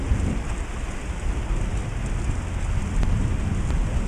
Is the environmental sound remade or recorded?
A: recorded